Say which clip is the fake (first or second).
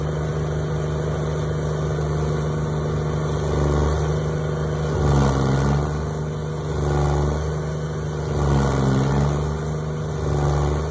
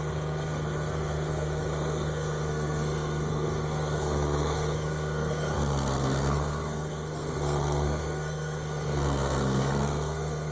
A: second